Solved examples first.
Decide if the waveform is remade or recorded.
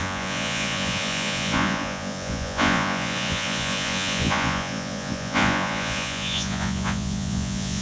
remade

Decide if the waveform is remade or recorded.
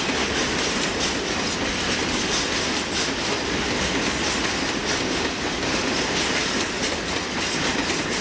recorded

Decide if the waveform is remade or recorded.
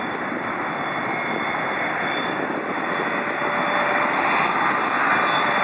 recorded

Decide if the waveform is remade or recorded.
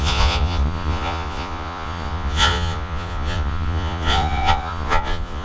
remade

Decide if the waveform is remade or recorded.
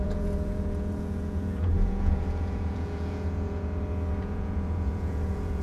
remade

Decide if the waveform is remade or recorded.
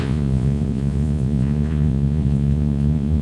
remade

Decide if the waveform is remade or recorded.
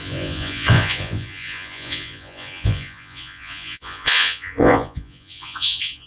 remade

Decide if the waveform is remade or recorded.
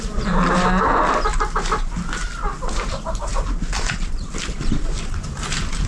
recorded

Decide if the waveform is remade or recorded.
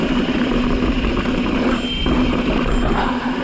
recorded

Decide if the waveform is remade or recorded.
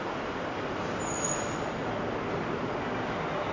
recorded